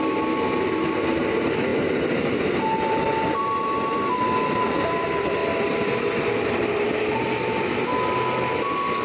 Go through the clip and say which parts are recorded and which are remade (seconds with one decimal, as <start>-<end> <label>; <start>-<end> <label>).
0.0-9.0 recorded